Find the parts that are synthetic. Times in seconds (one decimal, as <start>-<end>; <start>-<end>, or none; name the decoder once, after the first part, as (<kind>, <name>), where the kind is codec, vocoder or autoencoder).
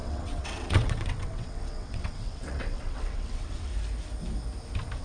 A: 0.0-3.7 (vocoder, WaveNeXt)